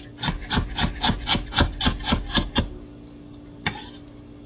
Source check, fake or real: real